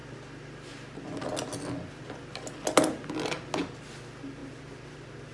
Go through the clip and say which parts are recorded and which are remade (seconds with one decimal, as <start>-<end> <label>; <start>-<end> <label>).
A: 0.0-5.3 recorded